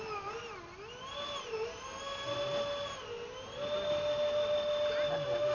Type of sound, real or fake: real